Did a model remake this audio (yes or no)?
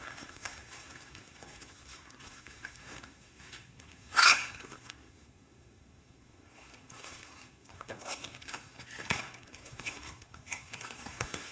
yes